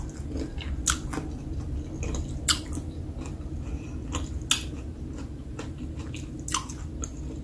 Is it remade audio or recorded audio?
recorded